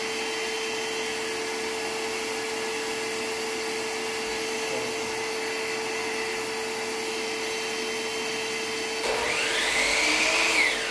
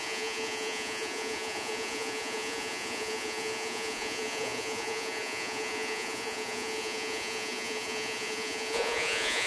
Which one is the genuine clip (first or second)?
first